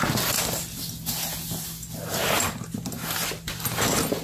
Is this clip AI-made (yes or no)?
no